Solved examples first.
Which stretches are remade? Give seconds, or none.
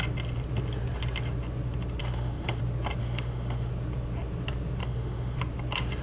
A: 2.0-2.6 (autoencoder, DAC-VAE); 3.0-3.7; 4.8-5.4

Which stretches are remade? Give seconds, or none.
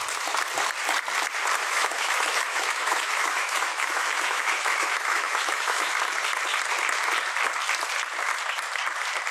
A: 1.6-5.9 (autoencoder, DAC-VAE)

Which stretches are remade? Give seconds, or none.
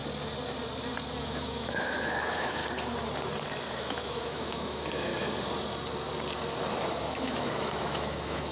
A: 1.2-2.6 (autoencoder, DAC-VAE); 3.7-5.1; 6.9-8.5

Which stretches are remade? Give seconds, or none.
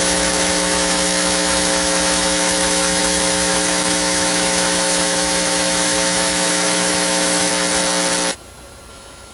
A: 0.0-7.5 (autoencoder, DAC-VAE); 8.9-9.3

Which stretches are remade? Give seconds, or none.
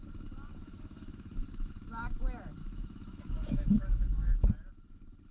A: 0.5-1.7 (autoencoder, DAC-VAE); 2.6-4.5